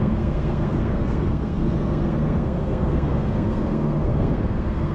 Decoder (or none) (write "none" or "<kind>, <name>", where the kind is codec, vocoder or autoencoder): codec, SNAC